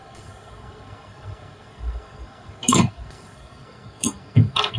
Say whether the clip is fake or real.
fake